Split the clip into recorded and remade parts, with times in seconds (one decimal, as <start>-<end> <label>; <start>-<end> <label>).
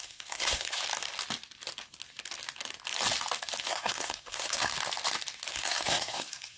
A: 0.0-0.8 remade; 0.8-3.7 recorded; 3.7-4.7 remade; 4.7-5.5 recorded; 5.5-6.6 remade